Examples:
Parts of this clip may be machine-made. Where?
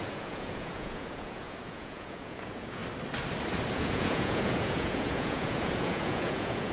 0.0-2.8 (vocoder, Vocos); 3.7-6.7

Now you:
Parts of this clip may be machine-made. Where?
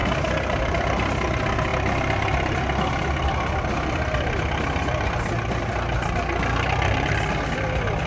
0.0-1.1 (vocoder, BigVGAN v2)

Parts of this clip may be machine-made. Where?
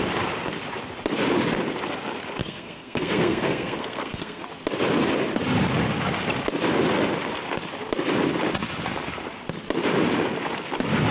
2.4-4.4 (codec, SNAC)